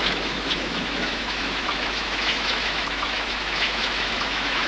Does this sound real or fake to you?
fake